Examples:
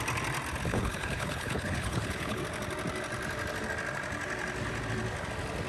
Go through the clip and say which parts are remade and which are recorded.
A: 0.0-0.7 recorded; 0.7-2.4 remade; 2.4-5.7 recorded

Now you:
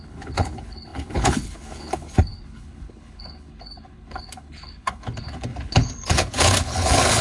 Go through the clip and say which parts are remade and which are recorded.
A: 0.0-7.2 remade

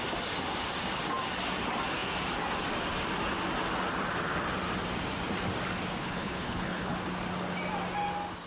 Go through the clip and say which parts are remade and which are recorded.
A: 0.0-6.0 recorded; 6.0-7.0 remade; 7.0-8.5 recorded

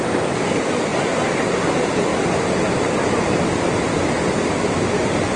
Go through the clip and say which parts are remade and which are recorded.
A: 0.0-5.4 recorded

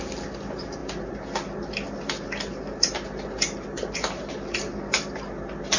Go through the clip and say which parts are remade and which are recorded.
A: 0.0-5.8 recorded

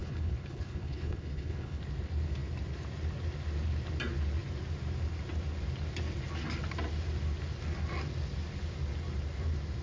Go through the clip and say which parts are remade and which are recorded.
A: 0.0-1.8 remade; 1.8-9.8 recorded

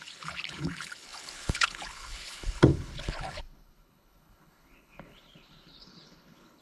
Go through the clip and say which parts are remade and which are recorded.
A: 0.0-6.6 remade

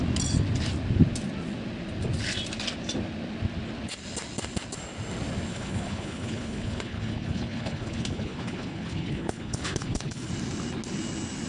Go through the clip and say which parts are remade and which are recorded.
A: 0.0-5.5 recorded; 5.5-10.3 remade; 10.3-11.5 recorded